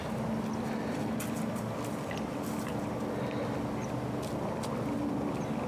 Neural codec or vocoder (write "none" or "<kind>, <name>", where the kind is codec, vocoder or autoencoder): none